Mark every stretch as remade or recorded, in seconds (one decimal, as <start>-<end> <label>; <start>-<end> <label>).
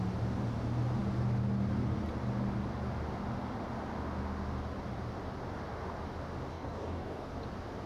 0.0-6.5 recorded; 6.5-7.3 remade; 7.3-7.9 recorded